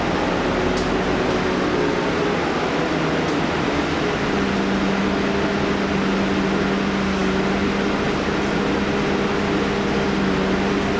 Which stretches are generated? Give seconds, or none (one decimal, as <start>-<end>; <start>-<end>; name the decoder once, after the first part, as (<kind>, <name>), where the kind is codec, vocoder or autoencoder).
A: none